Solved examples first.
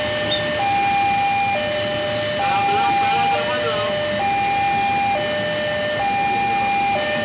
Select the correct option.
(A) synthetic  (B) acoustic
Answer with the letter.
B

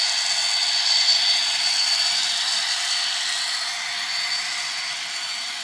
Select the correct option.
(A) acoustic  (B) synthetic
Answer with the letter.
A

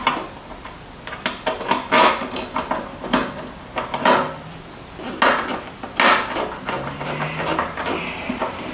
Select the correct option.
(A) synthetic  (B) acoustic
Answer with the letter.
B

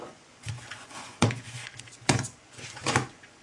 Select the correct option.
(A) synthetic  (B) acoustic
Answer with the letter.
A